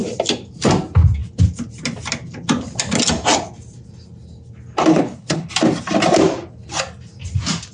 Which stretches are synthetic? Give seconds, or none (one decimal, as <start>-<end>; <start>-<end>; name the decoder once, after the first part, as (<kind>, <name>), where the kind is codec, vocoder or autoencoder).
4.9-5.5 (codec, HILCodec)